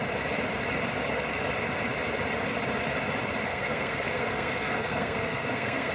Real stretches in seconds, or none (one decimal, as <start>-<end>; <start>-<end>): 0.0-3.5